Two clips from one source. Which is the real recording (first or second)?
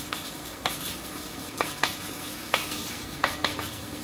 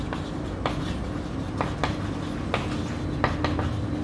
second